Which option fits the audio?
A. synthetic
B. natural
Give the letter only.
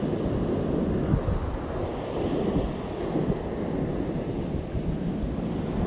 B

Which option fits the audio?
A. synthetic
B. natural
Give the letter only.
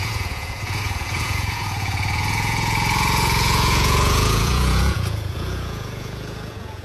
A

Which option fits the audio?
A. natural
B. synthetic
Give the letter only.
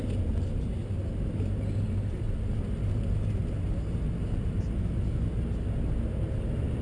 A